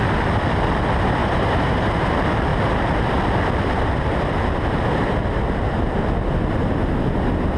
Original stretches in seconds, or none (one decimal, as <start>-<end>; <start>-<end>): 0.0-1.2; 2.1-7.6